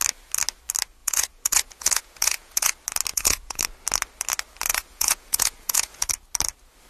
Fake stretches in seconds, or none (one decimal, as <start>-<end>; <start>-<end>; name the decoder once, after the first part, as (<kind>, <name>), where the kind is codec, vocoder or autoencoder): 1.0-2.7 (vocoder, Vocos); 3.1-3.6; 4.7-6.1